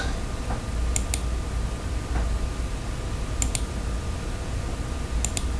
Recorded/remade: recorded